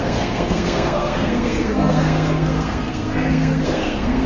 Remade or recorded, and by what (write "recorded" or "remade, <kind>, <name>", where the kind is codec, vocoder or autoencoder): remade, codec, SNAC